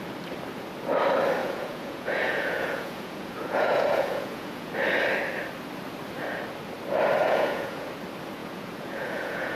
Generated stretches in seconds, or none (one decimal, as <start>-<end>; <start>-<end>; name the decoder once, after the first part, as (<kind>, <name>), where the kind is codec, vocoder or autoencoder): 1.4-4.7 (vocoder, Vocos); 7.2-7.9; 8.4-9.6